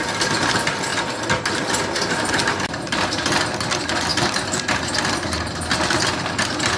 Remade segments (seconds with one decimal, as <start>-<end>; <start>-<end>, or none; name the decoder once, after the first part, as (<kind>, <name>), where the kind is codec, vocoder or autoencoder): none